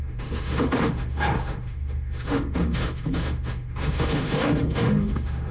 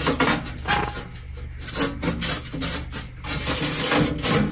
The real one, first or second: second